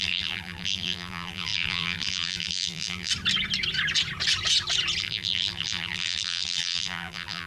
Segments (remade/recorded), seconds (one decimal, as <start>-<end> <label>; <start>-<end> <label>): 0.0-3.1 remade; 3.1-5.0 recorded; 5.0-7.5 remade